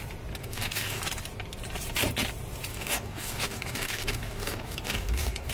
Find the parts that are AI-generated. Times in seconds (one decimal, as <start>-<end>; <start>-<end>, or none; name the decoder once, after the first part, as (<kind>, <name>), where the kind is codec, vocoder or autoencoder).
0.4-1.0 (codec, DAC); 2.7-5.5